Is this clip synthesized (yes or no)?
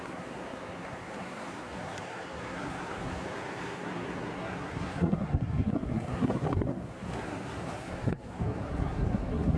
yes